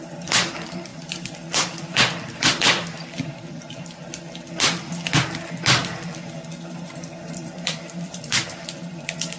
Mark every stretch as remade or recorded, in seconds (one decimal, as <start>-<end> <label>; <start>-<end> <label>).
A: 0.0-4.0 remade; 4.0-5.8 recorded; 5.8-9.4 remade

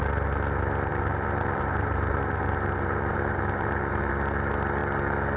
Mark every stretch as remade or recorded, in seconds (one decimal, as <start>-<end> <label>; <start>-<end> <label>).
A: 0.0-0.9 recorded; 0.9-4.1 remade; 4.1-5.4 recorded

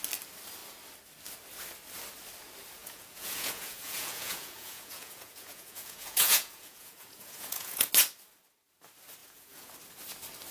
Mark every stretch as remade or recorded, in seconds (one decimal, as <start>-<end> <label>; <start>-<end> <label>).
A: 0.0-2.8 recorded; 2.8-7.9 remade; 7.9-9.2 recorded; 9.2-9.7 remade; 9.7-10.5 recorded

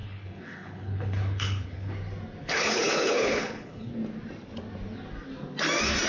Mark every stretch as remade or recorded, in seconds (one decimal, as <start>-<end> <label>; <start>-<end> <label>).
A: 0.0-1.9 remade; 1.9-2.4 recorded; 2.4-3.9 remade; 3.9-6.1 recorded

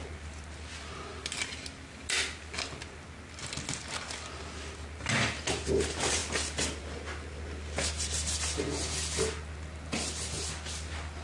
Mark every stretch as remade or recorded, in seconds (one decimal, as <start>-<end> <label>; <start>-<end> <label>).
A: 0.0-11.2 recorded

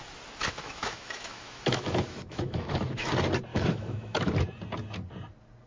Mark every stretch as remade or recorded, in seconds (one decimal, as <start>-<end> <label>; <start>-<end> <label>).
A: 0.0-0.4 recorded; 0.4-3.1 remade; 3.1-3.5 recorded; 3.5-4.3 remade; 4.3-5.7 recorded

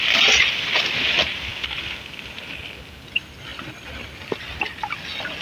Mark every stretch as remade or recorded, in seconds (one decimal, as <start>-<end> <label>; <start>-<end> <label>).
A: 0.0-5.4 recorded

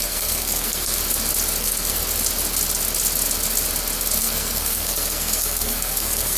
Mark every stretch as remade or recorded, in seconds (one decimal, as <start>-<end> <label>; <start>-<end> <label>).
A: 0.0-1.0 remade; 1.0-1.6 recorded; 1.6-2.0 remade; 2.0-4.2 recorded; 4.2-6.4 remade